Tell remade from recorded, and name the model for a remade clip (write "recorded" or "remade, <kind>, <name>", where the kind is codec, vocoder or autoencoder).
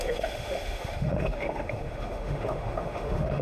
remade, autoencoder, DAC-VAE